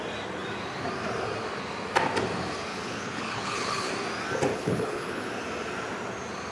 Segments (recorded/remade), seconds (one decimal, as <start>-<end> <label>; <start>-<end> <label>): 0.0-2.7 recorded; 2.7-3.9 remade; 3.9-4.5 recorded; 4.5-5.3 remade; 5.3-6.5 recorded